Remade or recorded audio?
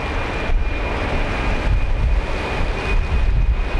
recorded